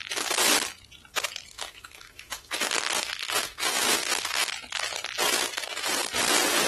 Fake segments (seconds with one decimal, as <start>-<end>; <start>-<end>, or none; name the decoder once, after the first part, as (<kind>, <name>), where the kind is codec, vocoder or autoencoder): 1.5-4.5 (autoencoder, DAC-VAE); 5.4-5.9